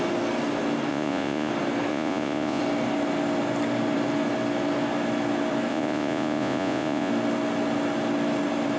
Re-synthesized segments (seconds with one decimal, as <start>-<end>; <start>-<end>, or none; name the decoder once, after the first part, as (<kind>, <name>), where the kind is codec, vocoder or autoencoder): 0.9-1.5 (vocoder, Vocos); 1.9-2.6; 5.7-7.1

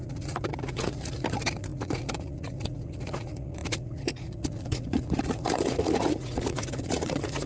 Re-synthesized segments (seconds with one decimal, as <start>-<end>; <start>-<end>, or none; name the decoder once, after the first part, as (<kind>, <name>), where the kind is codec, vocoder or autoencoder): 0.0-7.5 (vocoder, Vocos)

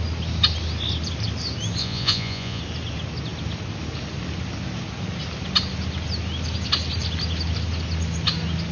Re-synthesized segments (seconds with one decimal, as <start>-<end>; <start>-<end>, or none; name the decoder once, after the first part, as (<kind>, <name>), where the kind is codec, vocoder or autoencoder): 1.8-2.6 (vocoder, Vocos)

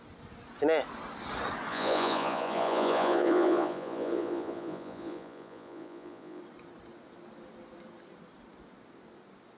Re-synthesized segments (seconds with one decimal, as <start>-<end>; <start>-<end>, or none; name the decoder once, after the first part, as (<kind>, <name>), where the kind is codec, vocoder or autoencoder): 1.7-6.4 (vocoder, Vocos)